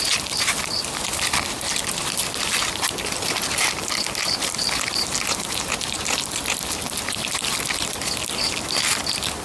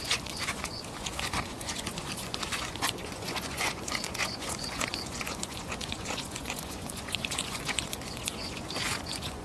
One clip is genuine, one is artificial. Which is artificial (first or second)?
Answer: second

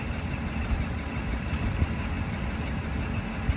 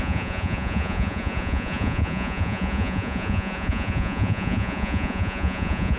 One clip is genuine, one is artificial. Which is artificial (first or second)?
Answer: second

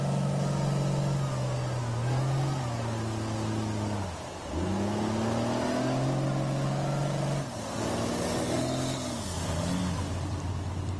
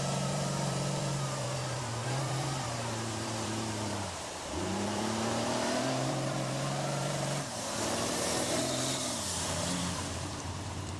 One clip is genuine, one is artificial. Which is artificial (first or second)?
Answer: second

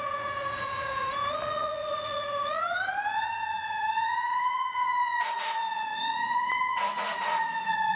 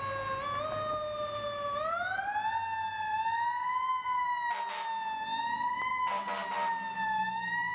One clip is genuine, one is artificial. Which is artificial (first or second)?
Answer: first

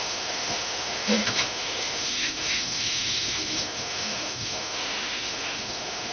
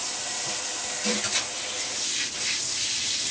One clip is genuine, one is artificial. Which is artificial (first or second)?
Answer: first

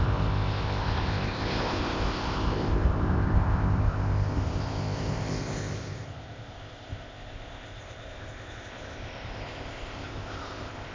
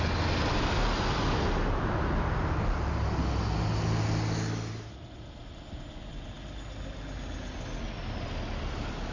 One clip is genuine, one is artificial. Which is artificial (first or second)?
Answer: first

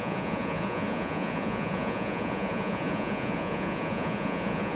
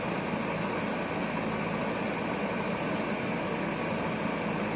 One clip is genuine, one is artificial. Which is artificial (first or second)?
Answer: first